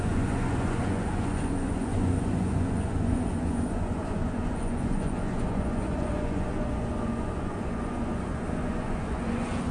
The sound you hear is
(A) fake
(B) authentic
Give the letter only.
A